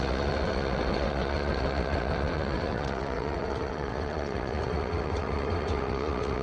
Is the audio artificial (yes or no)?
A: yes